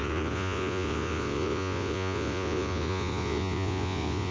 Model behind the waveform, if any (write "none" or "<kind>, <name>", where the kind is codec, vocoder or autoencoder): vocoder, Vocos